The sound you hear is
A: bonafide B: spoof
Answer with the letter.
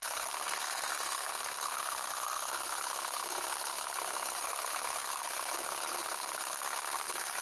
B